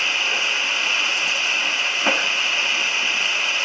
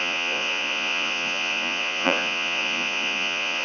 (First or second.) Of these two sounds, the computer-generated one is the second